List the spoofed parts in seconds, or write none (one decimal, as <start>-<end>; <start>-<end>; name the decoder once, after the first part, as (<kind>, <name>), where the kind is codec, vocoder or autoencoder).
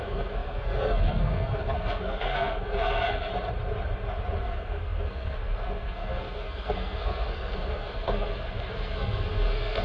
0.0-3.3 (codec, SNAC); 4.4-9.8